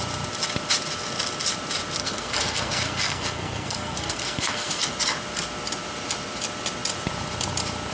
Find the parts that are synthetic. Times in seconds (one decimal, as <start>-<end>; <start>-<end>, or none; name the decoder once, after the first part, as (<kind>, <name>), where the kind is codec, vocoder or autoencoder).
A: 2.0-4.9 (codec, SNAC)